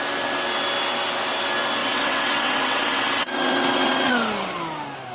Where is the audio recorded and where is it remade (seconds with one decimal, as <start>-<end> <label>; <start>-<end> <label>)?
0.0-1.8 recorded; 1.8-4.1 remade; 4.1-5.1 recorded